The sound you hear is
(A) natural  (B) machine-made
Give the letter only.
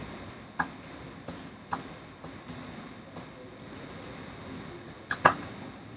A